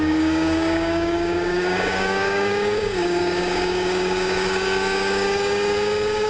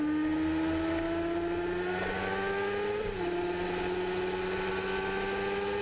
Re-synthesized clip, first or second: first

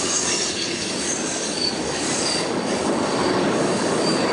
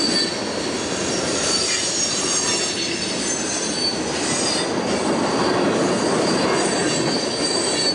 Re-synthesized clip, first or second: first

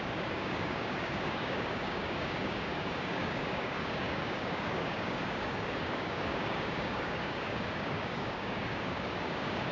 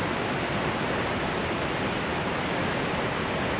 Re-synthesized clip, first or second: first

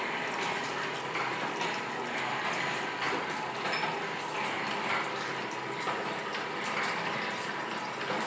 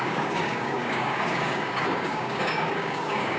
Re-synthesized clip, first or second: second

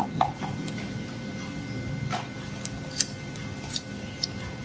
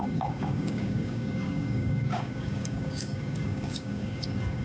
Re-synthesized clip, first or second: second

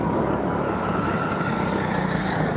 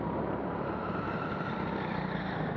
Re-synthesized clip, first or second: first